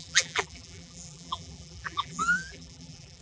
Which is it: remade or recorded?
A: remade